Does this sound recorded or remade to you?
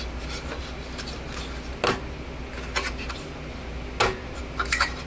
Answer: recorded